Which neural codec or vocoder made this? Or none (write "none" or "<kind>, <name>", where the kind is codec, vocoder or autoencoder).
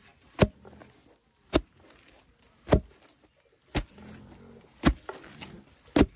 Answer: none